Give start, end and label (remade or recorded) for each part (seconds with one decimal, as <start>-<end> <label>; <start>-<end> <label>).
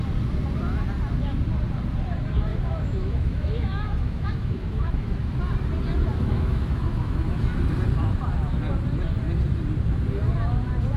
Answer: 0.0-2.5 recorded; 2.5-5.4 remade; 5.4-6.1 recorded; 6.1-7.4 remade; 7.4-11.0 recorded